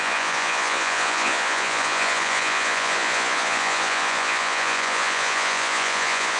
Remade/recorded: remade